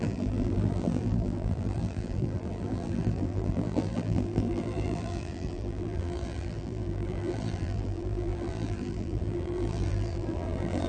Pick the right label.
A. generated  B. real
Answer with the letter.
A